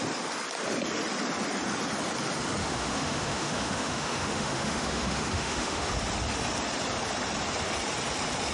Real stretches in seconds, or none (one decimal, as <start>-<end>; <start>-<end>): 0.0-2.6; 5.9-8.5